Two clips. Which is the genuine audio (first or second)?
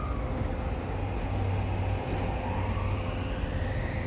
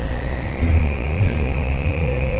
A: first